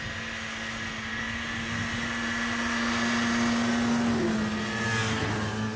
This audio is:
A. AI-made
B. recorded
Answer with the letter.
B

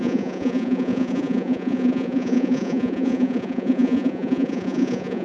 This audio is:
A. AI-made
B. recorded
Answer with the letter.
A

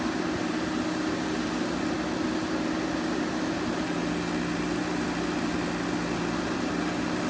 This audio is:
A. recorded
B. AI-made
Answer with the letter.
A